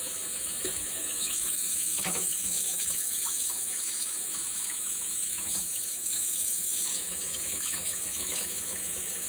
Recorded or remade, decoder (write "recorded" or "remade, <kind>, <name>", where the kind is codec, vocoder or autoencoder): remade, autoencoder, DAC-VAE